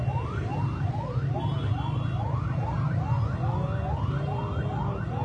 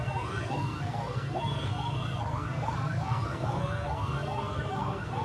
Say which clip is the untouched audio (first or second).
first